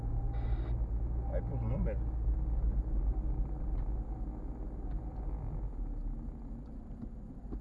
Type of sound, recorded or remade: recorded